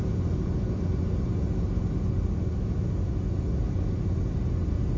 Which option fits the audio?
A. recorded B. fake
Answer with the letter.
A